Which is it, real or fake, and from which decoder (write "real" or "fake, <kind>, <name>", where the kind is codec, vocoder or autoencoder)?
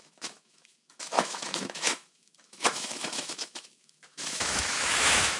fake, autoencoder, DAC-VAE